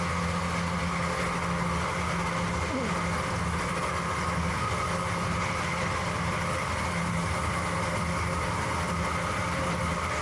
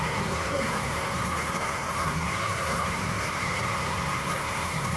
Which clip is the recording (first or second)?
first